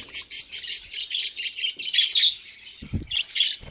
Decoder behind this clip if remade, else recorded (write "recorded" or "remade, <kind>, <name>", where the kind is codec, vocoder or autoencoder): recorded